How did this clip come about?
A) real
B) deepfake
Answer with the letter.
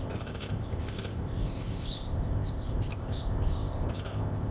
B